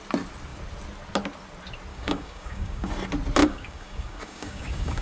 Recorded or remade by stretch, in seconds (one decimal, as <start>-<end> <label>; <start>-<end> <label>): 0.0-1.9 recorded; 1.9-2.9 remade; 2.9-3.4 recorded; 3.4-5.0 remade